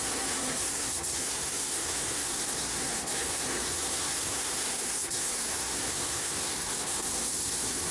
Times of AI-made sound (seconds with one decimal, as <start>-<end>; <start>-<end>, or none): 0.0-7.9